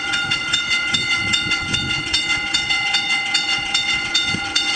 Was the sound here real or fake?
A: fake